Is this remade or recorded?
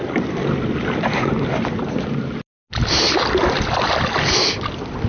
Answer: recorded